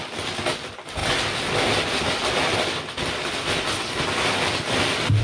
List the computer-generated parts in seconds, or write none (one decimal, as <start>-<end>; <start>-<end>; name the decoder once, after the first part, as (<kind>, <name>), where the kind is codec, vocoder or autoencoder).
none